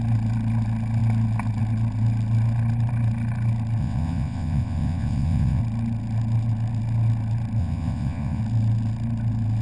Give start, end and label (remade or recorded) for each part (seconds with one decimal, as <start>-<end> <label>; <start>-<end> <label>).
0.0-3.8 recorded; 3.8-5.6 remade; 5.6-7.6 recorded; 7.6-8.4 remade; 8.4-9.6 recorded